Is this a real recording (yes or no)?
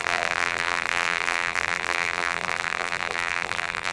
no